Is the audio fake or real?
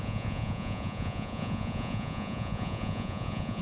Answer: fake